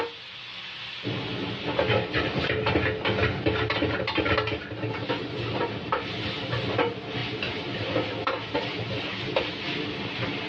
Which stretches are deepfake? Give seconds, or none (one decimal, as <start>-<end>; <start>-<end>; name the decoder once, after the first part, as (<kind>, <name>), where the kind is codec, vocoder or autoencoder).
none